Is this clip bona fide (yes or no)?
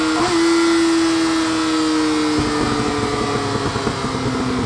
yes